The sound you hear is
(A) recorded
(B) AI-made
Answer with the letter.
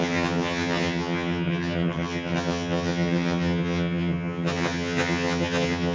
B